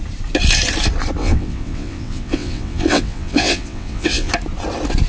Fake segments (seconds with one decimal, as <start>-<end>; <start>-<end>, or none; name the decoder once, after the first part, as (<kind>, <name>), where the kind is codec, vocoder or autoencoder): 1.2-4.3 (vocoder, WaveNeXt)